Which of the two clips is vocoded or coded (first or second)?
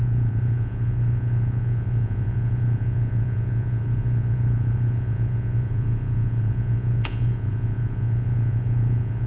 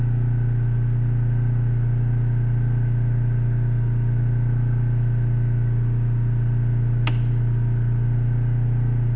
first